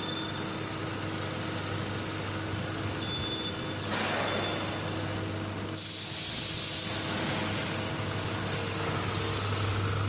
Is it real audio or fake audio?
real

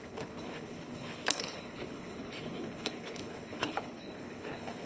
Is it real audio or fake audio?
fake